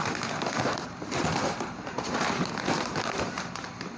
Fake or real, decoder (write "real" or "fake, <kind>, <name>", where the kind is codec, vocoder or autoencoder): real